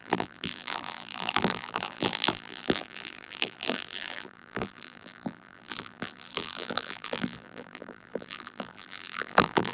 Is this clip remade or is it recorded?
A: remade